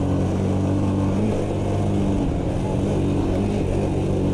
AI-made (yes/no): no